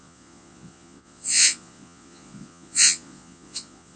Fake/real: fake